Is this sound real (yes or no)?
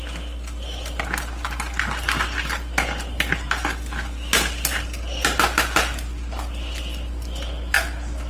yes